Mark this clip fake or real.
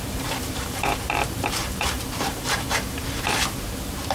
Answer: fake